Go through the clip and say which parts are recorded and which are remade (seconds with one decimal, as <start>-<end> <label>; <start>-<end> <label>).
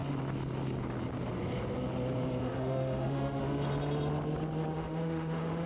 0.0-2.4 recorded; 2.4-3.4 remade; 3.4-4.7 recorded; 4.7-5.7 remade